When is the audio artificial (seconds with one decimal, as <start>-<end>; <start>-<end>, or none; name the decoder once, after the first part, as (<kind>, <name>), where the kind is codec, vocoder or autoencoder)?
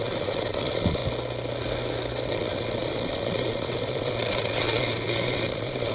0.0-1.0 (vocoder, Vocos); 2.3-5.9